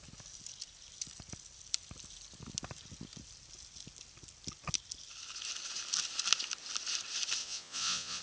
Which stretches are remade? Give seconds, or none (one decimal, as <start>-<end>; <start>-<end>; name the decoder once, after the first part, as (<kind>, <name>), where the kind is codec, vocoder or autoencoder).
7.4-8.2 (vocoder, Vocos)